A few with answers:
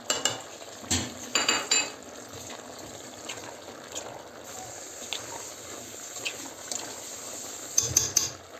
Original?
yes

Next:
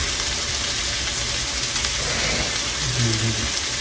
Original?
yes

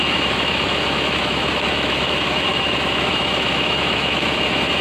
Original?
no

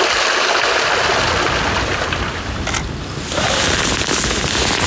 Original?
yes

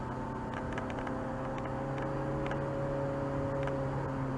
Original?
yes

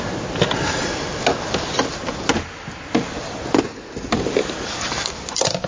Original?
yes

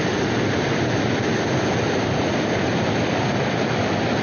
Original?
no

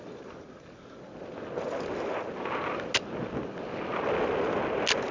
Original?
yes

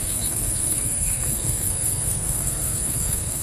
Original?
no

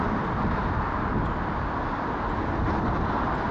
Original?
yes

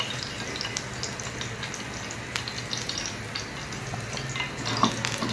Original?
yes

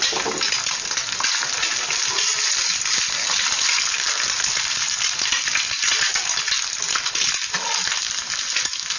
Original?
yes